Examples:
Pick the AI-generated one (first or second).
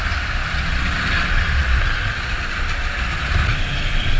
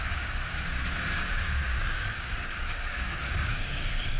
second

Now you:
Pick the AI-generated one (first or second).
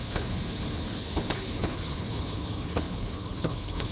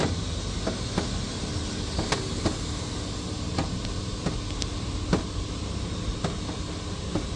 first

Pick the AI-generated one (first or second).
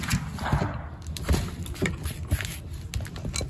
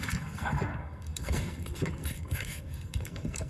second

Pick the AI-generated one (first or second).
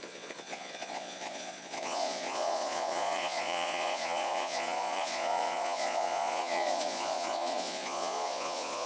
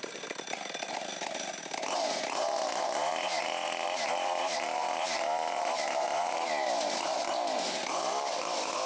first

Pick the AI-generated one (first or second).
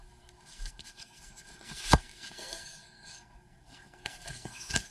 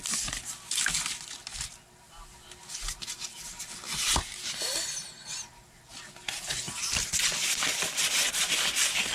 first